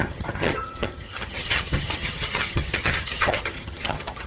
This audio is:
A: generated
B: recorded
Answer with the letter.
A